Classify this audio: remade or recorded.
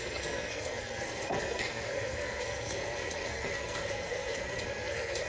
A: remade